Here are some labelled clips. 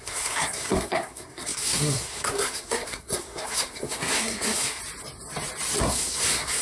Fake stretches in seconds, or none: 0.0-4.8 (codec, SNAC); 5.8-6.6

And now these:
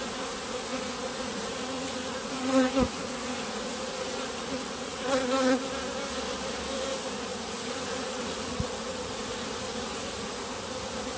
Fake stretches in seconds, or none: 0.7-5.6 (vocoder, Vocos); 7.3-9.1; 9.7-10.5

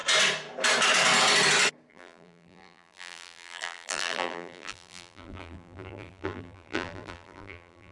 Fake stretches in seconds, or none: 1.9-7.9 (vocoder, BigVGAN v2)

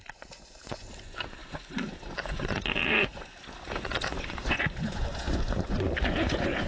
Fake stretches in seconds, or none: 0.0-6.7 (vocoder, Vocos)

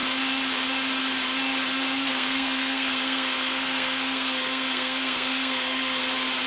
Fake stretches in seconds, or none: 2.1-6.0 (codec, SNAC)